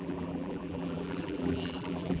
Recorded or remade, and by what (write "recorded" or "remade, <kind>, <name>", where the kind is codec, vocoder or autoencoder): remade, vocoder, BigVGAN v2